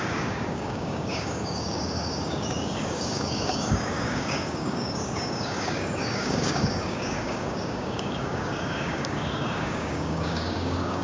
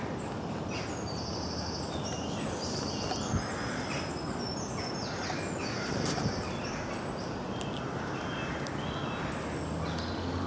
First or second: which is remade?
first